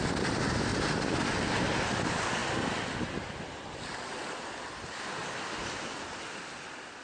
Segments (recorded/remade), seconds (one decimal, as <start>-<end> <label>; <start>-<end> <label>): 0.0-0.7 recorded; 0.7-1.3 remade; 1.3-2.4 recorded; 2.4-3.0 remade; 3.0-5.2 recorded; 5.2-7.0 remade